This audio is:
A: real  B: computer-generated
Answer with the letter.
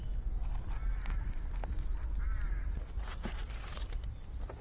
A